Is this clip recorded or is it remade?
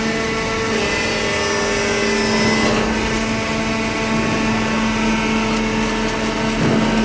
recorded